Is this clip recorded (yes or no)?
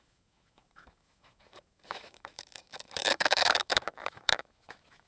no